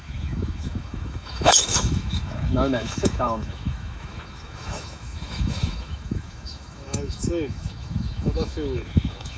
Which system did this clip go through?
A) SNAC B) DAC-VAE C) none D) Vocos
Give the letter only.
B